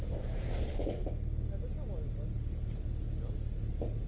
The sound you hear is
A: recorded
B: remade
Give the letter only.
A